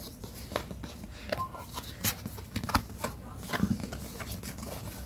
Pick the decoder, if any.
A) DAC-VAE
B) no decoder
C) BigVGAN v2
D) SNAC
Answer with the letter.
B